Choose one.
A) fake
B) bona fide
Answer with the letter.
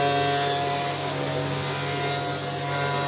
B